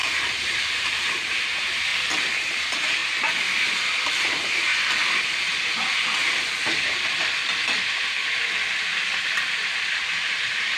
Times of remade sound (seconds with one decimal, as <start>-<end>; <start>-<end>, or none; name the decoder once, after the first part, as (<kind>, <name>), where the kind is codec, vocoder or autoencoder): 0.0-1.9 (vocoder, BigVGAN v2); 2.4-3.0; 3.6-4.7; 9.9-10.8